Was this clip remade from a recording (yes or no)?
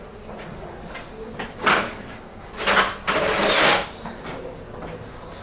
no